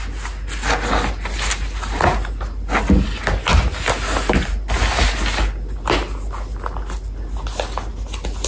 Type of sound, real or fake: real